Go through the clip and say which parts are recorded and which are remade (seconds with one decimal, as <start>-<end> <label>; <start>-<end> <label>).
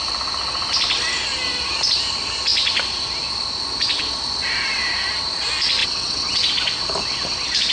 0.0-5.8 recorded; 5.8-6.5 remade; 6.5-7.7 recorded